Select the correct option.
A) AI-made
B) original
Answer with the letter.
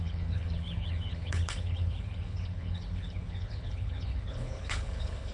A